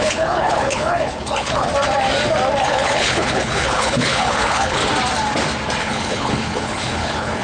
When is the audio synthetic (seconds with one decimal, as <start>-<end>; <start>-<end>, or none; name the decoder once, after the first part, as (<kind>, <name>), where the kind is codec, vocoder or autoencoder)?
0.0-1.7 (codec, HILCodec); 2.6-4.8; 5.8-7.4